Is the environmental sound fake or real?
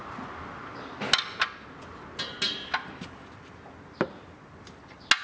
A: real